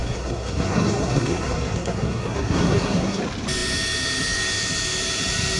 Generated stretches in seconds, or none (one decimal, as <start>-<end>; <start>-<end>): 0.0-3.2